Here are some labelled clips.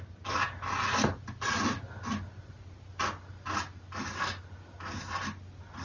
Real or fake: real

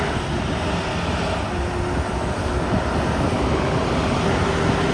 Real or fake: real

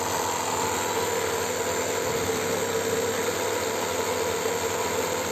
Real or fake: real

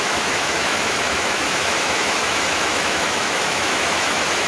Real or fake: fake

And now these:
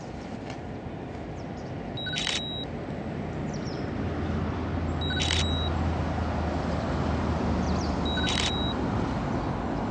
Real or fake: real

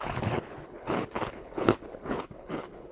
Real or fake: fake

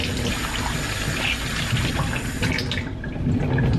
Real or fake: real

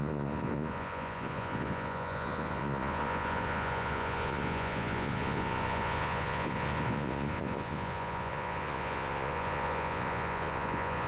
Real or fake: fake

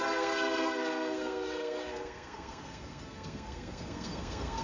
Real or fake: fake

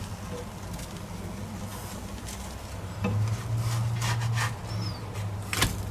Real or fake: real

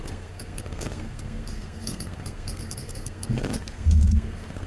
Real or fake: fake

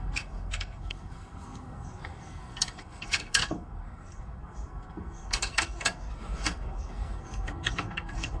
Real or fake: fake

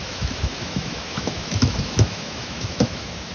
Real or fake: fake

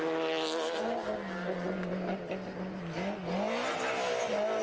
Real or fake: real